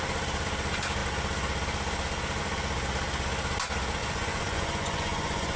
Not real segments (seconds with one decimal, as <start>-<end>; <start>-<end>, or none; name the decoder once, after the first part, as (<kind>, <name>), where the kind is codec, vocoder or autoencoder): 4.0-5.6 (vocoder, Vocos)